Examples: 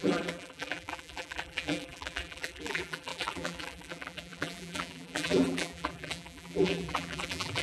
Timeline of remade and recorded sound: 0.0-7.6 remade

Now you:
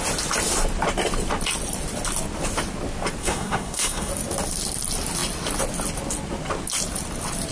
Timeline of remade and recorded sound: 0.0-3.2 recorded; 3.2-4.1 remade; 4.1-7.5 recorded

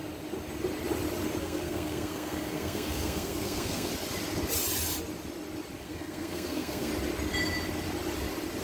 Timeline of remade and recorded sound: 0.0-1.4 recorded; 1.4-3.9 remade; 3.9-5.8 recorded; 5.8-6.9 remade; 6.9-8.6 recorded

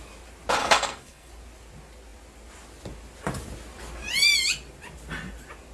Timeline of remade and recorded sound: 0.0-0.6 recorded; 0.6-1.3 remade; 1.3-5.7 recorded

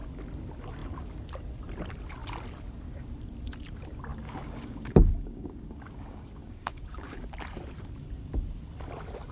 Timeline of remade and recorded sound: 0.0-4.1 recorded; 4.1-7.3 remade; 7.3-9.3 recorded

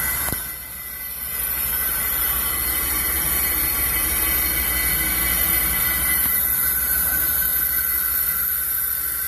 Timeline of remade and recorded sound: 0.0-4.0 remade; 4.0-5.5 recorded; 5.5-7.5 remade; 7.5-9.3 recorded

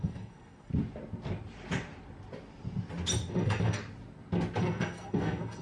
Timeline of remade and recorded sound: 0.0-0.7 remade; 0.7-3.3 recorded; 3.3-3.8 remade; 3.8-4.6 recorded; 4.6-5.6 remade